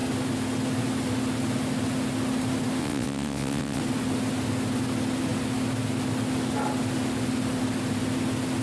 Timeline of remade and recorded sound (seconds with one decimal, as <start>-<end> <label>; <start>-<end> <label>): 0.0-2.8 recorded; 2.8-3.8 remade; 3.8-8.6 recorded